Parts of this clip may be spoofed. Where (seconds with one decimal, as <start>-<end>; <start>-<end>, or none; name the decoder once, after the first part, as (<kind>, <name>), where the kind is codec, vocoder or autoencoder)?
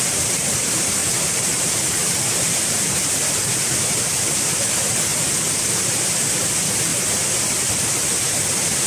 0.0-6.9 (vocoder, BigVGAN v2); 7.4-8.9